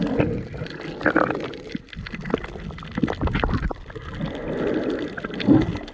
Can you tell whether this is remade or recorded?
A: recorded